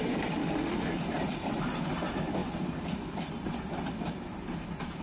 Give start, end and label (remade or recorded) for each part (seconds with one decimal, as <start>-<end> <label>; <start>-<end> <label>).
0.0-0.4 recorded; 0.4-0.9 remade; 0.9-5.0 recorded